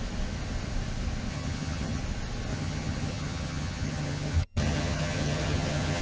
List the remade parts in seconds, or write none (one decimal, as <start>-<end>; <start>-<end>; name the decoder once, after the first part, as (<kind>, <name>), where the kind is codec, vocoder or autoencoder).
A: 1.3-2.0 (vocoder, HiFi-GAN); 2.5-6.0